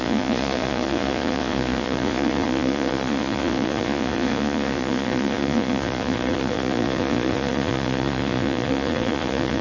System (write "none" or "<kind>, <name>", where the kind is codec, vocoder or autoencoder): vocoder, Vocos